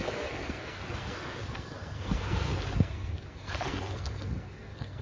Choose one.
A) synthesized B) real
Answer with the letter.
A